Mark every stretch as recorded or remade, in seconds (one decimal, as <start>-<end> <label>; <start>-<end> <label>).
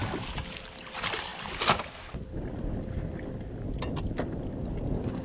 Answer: 0.0-5.2 recorded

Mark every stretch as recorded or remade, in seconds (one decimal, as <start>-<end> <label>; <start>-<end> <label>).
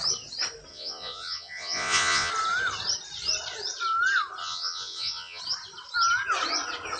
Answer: 0.0-0.7 recorded; 0.7-2.3 remade; 2.3-4.4 recorded; 4.4-5.4 remade; 5.4-7.0 recorded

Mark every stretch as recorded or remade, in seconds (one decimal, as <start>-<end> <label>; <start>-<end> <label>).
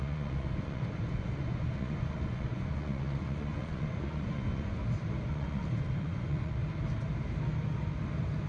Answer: 0.0-4.8 remade; 4.8-5.3 recorded; 5.3-6.6 remade; 6.6-8.5 recorded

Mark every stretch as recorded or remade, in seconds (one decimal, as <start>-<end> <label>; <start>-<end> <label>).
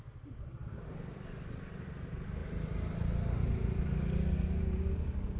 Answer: 0.0-5.4 recorded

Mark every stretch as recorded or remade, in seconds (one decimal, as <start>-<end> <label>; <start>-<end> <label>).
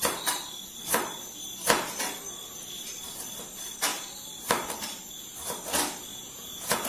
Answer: 0.0-6.1 recorded; 6.1-6.9 remade